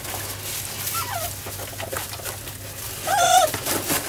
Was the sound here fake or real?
real